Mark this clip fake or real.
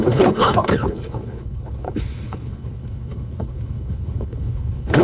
fake